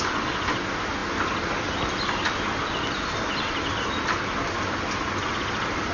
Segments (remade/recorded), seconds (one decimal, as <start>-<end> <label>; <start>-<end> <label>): 0.0-5.9 recorded